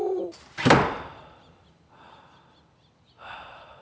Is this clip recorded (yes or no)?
yes